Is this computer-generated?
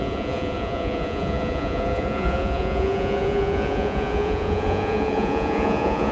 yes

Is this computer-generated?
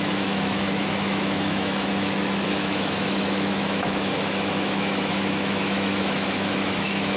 yes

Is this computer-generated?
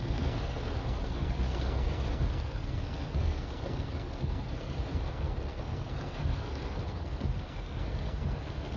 yes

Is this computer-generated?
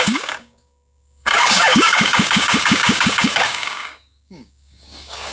yes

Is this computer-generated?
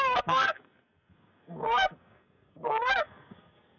yes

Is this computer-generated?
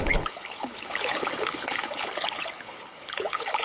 yes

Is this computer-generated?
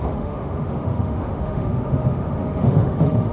yes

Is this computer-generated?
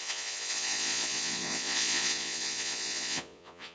yes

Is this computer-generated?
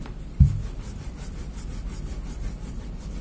no